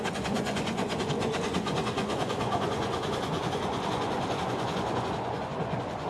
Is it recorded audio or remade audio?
remade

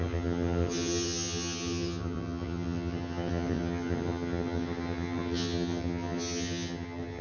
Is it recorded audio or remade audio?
remade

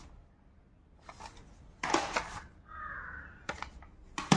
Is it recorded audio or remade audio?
recorded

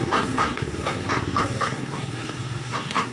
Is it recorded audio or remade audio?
remade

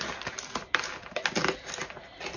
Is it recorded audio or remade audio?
recorded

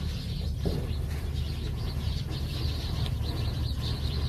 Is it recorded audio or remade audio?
recorded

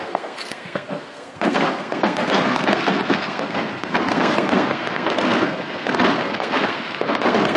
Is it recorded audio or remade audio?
remade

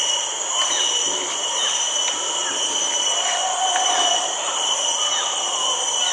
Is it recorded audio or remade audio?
recorded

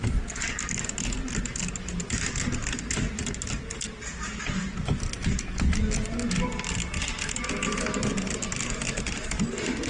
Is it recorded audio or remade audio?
recorded